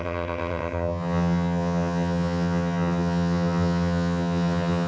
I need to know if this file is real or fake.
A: fake